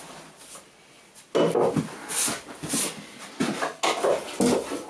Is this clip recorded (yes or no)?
yes